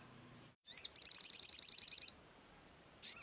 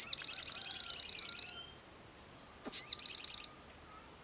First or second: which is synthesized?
first